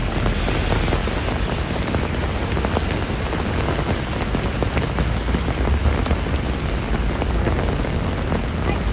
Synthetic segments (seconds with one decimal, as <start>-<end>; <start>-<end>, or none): none